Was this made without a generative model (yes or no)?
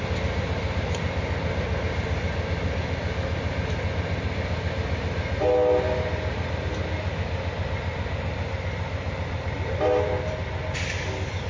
yes